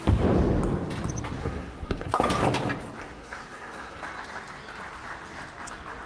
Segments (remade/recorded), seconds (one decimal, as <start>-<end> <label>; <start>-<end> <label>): 0.0-1.4 recorded; 1.4-2.1 remade; 2.1-3.0 recorded; 3.0-4.0 remade; 4.0-6.1 recorded